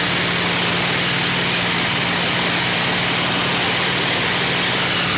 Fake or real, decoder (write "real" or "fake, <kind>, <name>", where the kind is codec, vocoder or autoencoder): real